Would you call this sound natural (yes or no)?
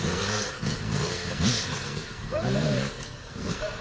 no